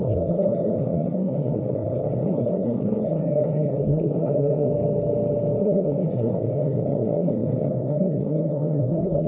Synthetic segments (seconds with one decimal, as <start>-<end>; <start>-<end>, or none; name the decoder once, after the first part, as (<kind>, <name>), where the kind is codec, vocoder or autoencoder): 0.0-4.7 (codec, SNAC); 5.6-9.3